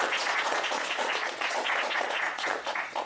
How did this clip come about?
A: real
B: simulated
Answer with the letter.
B